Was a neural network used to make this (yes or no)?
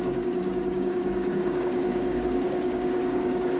yes